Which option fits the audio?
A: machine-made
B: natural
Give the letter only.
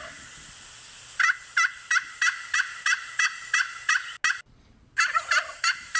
B